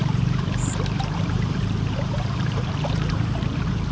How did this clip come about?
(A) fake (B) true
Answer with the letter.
A